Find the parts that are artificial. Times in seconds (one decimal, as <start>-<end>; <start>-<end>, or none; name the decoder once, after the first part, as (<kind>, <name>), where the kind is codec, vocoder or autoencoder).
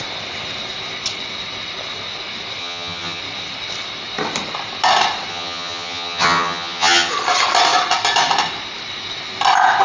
2.6-3.2 (vocoder, HiFi-GAN); 5.3-7.1